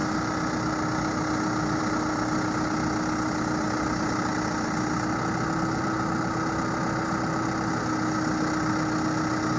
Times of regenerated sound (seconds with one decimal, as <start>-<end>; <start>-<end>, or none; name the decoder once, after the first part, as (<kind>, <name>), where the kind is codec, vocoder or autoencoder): none